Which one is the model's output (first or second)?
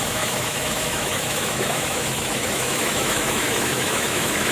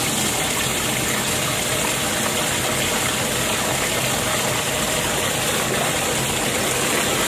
first